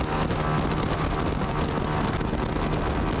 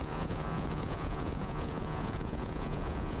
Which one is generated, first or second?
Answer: second